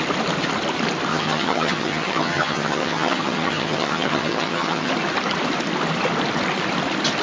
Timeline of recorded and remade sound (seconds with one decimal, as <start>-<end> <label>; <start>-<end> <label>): 0.0-1.1 recorded; 1.1-4.9 remade; 4.9-7.2 recorded